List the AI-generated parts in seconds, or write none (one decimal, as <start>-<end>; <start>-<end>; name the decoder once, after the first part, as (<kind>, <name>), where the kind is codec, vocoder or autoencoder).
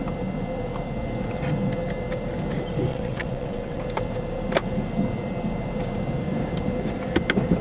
2.9-3.8 (vocoder, WaveNeXt)